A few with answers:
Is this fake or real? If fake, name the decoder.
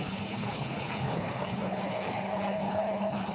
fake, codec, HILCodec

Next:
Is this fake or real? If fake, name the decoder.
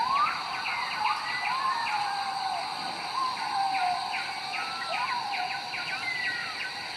real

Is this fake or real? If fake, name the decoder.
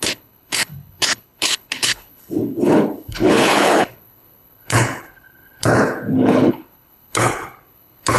fake, codec, HILCodec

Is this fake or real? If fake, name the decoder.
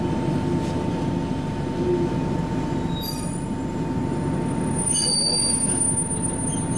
real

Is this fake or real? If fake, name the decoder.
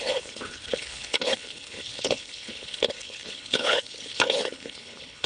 fake, codec, HILCodec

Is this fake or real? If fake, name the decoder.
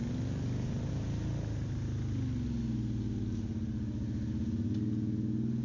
real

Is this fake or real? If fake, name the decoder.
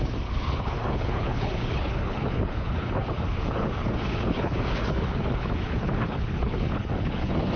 fake, codec, HILCodec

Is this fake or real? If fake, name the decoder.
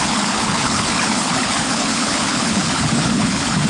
fake, codec, HILCodec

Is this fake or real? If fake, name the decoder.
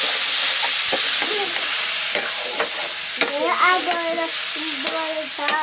real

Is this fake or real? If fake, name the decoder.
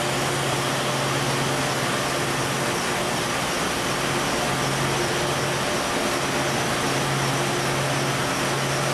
real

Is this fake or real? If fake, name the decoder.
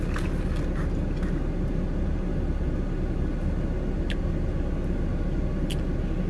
real